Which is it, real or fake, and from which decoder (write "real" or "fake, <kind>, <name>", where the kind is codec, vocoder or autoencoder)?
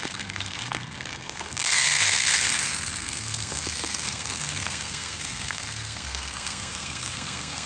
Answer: fake, codec, SNAC